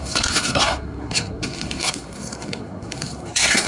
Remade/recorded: remade